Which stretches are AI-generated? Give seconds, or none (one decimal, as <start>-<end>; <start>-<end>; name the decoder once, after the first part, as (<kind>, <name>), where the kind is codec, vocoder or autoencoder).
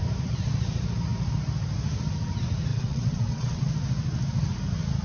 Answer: 2.7-3.6 (vocoder, WaveNeXt)